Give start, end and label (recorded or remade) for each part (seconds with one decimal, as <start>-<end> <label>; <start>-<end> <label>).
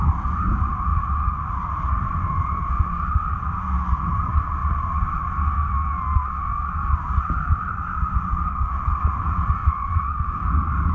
0.0-9.6 recorded; 9.6-10.1 remade; 10.1-10.9 recorded